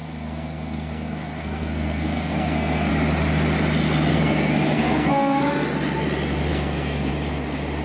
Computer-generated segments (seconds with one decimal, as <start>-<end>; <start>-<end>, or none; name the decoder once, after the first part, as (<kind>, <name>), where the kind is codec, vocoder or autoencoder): 0.0-2.9 (codec, SNAC); 4.1-5.4; 6.5-7.1